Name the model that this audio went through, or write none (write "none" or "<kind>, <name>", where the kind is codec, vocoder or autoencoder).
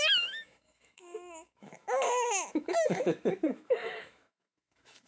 autoencoder, DAC-VAE